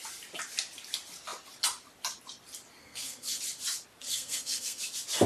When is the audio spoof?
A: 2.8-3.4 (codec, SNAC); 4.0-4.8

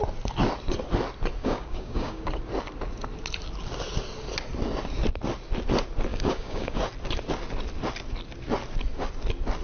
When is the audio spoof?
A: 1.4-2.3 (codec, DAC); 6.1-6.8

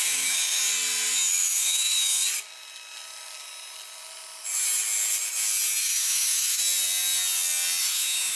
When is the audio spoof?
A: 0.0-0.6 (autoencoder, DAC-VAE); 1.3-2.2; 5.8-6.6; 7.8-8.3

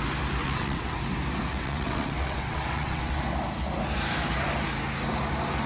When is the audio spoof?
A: 0.4-1.0 (vocoder, WaveNeXt); 1.5-3.2